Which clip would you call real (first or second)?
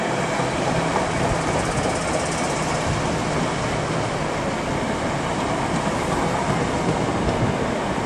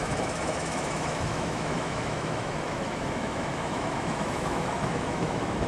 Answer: first